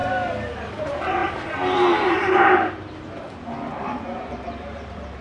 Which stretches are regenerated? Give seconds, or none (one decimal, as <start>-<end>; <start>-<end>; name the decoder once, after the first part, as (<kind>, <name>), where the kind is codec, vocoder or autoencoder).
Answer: 0.7-5.2 (vocoder, BigVGAN v2)